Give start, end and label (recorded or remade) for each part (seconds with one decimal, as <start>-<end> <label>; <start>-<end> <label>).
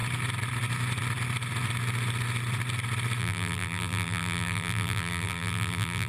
0.0-3.2 recorded; 3.2-6.1 remade